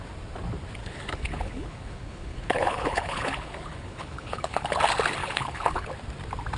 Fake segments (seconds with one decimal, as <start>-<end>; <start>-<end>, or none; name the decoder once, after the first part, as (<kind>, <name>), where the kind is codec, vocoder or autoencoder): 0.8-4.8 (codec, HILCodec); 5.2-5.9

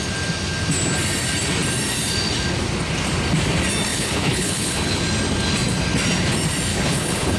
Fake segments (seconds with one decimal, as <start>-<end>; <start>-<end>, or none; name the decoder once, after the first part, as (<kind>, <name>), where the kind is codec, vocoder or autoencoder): 3.9-5.0 (codec, HILCodec); 6.7-7.4

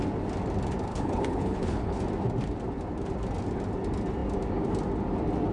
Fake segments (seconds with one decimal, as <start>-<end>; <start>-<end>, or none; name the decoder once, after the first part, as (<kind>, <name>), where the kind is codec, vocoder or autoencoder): 0.9-2.0 (codec, HILCodec)

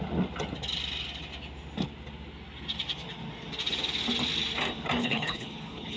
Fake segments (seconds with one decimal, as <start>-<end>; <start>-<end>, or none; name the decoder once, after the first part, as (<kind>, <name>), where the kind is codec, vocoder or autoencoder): 5.0-6.0 (codec, HILCodec)

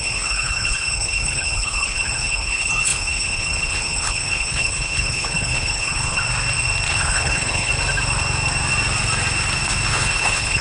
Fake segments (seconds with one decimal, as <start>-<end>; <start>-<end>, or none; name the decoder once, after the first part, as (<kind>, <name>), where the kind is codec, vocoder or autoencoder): 0.0-6.2 (codec, HILCodec); 6.9-7.7; 9.9-10.6